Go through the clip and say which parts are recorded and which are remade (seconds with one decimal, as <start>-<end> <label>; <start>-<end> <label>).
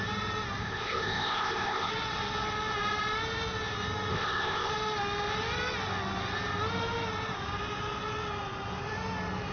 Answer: 0.0-0.6 recorded; 0.6-1.9 remade; 1.9-4.1 recorded; 4.1-4.7 remade; 4.7-9.5 recorded